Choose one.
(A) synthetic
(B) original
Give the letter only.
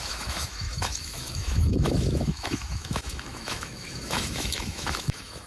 A